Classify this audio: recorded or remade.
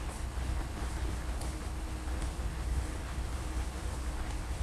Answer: remade